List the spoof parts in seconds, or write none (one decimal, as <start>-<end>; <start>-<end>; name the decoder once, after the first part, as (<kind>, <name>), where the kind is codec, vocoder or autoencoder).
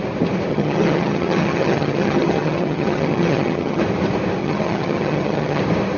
0.5-3.8 (vocoder, HiFi-GAN); 4.4-5.6